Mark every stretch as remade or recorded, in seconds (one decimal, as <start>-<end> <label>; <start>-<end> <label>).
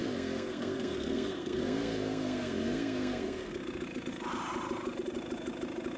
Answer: 0.0-3.5 remade; 3.5-6.0 recorded